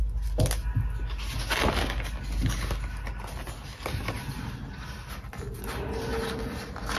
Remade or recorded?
recorded